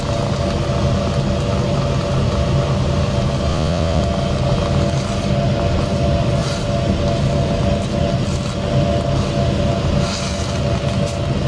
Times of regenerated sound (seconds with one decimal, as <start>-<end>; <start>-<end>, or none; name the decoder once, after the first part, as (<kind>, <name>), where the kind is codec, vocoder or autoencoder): 3.5-4.0 (vocoder, Vocos)

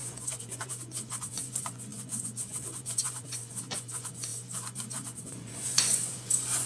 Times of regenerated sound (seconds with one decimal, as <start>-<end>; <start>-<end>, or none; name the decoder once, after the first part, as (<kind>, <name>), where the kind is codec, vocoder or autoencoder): 0.0-6.7 (vocoder, Vocos)

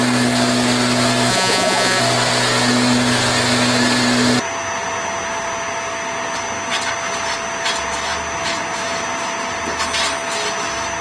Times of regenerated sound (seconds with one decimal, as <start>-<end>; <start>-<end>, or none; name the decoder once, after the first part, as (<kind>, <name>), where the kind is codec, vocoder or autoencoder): 1.3-2.0 (vocoder, Vocos)

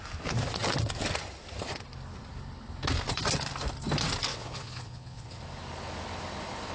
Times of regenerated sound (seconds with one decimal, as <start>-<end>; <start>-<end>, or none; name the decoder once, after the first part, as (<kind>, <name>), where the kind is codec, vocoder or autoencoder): 4.3-5.4 (vocoder, Vocos)

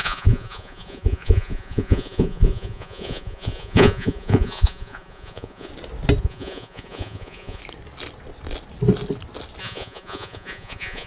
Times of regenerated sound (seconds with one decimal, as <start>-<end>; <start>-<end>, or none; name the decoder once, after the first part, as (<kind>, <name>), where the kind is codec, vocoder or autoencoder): 0.0-5.7 (vocoder, Vocos); 6.2-7.6; 9.6-11.1

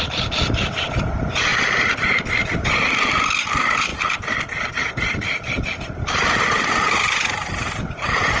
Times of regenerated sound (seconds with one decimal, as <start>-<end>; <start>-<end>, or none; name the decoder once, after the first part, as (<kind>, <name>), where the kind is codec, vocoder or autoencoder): none